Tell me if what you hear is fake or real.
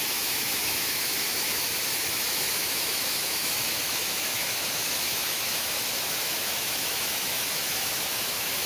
fake